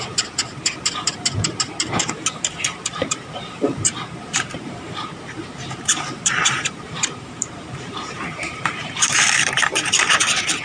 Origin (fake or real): fake